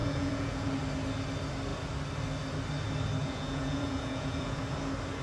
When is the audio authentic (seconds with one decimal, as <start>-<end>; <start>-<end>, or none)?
0.7-3.2; 4.6-5.2